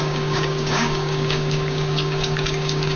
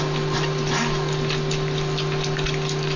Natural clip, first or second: second